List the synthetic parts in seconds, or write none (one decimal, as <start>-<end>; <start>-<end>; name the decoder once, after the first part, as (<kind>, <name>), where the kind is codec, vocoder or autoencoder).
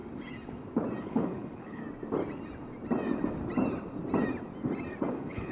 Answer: 1.0-1.8 (codec, HILCodec); 5.1-5.5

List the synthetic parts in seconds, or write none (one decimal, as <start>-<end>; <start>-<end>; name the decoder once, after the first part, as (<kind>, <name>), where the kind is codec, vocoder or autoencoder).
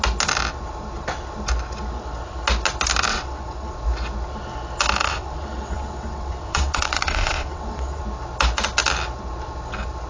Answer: 3.1-3.7 (vocoder, WaveNeXt); 5.1-8.0